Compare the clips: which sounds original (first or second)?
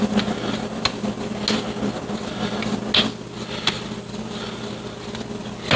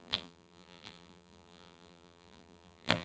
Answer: first